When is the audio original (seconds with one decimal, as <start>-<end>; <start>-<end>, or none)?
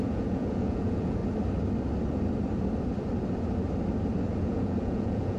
1.2-4.4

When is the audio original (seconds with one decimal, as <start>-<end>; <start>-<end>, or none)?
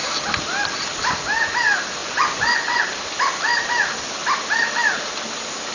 0.0-2.0; 2.8-5.7